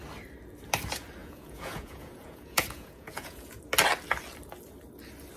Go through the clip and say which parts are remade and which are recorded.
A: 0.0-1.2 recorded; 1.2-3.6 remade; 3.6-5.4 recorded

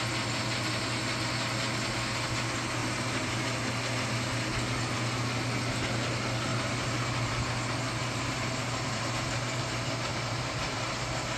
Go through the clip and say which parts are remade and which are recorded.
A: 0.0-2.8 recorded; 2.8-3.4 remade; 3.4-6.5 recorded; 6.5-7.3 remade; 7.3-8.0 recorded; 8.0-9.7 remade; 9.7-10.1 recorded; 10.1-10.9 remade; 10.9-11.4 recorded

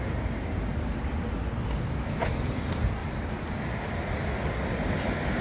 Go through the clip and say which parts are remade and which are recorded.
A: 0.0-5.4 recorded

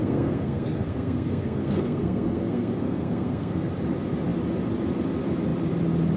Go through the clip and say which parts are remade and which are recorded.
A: 0.0-3.7 remade; 3.7-6.2 recorded